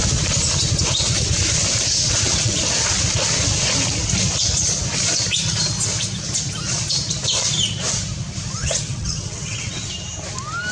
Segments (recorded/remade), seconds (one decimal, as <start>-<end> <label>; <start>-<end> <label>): 0.0-1.9 recorded; 1.9-2.6 remade; 2.6-8.6 recorded; 8.6-9.9 remade; 9.9-10.7 recorded

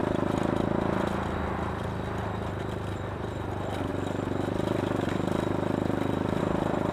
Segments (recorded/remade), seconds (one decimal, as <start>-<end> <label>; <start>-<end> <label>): 0.0-2.9 recorded; 2.9-3.9 remade; 3.9-6.4 recorded; 6.4-6.9 remade

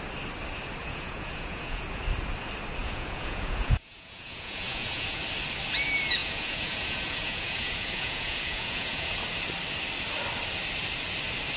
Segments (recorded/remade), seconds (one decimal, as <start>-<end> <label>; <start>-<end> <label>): 0.0-0.8 recorded; 0.8-2.0 remade; 2.0-2.8 recorded; 2.8-5.2 remade; 5.2-6.2 recorded; 6.2-9.2 remade; 9.2-11.6 recorded